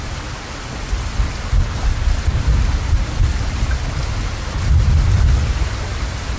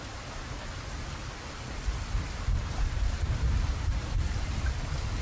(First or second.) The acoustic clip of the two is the first